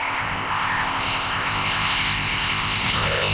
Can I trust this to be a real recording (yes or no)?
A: no